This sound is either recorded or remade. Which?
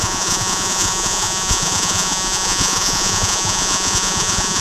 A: remade